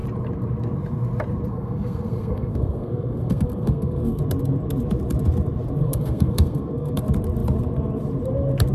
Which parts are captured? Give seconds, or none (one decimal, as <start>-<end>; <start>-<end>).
0.0-1.5; 4.2-5.8; 7.0-8.7